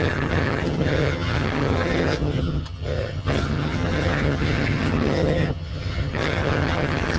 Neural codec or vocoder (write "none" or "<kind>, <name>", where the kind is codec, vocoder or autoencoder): vocoder, HiFi-GAN